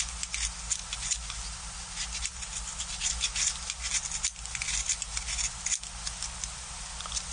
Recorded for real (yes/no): yes